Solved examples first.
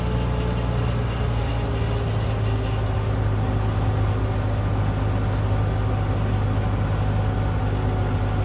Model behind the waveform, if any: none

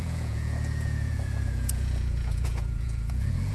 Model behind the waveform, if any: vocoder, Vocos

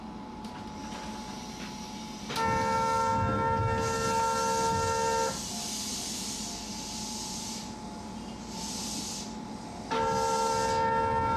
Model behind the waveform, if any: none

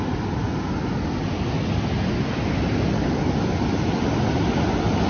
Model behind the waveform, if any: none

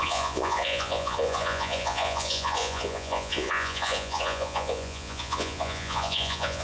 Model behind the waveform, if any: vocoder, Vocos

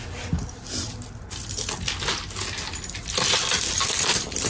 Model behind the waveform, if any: none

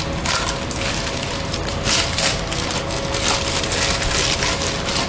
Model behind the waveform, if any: none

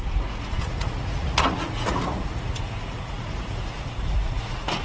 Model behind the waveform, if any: vocoder, Vocos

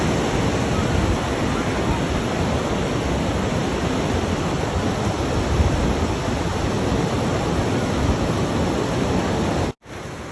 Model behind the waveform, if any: none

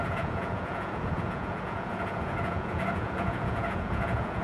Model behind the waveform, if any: vocoder, Vocos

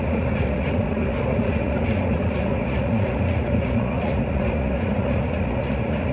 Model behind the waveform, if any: vocoder, Vocos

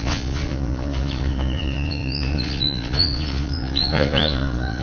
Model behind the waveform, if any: vocoder, Vocos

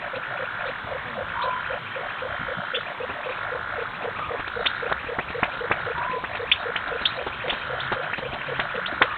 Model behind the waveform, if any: none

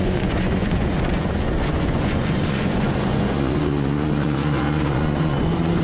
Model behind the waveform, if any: vocoder, Vocos